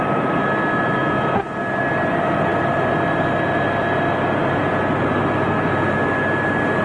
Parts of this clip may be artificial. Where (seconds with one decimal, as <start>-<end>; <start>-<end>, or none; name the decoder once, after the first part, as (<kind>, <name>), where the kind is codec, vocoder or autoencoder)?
none